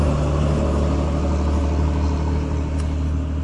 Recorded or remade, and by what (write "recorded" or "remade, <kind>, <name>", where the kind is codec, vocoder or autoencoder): recorded